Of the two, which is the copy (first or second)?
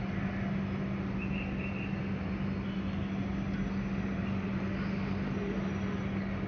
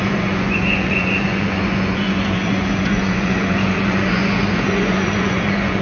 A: second